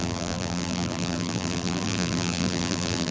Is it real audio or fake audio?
fake